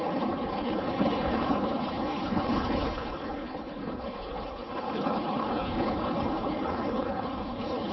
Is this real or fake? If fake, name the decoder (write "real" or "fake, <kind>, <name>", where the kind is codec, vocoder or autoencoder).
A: fake, codec, HILCodec